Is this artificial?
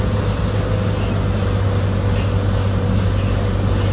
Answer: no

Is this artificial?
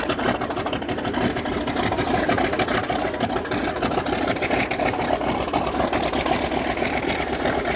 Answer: no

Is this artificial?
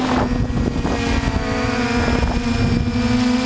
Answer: no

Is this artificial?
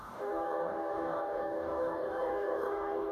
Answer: yes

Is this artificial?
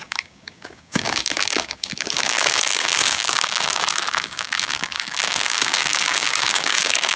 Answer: yes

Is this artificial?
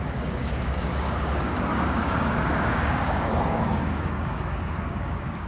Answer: yes